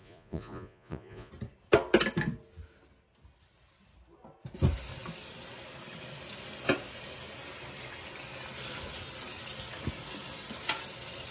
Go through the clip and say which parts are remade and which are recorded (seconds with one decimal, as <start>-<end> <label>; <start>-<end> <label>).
0.0-1.3 remade; 1.3-11.3 recorded